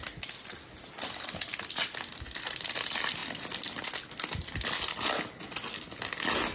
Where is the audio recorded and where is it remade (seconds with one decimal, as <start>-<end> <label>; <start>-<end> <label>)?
0.0-6.5 recorded